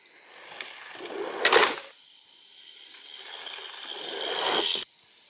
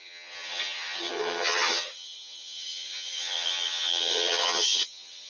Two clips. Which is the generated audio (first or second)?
second